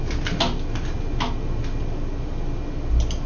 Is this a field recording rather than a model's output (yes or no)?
yes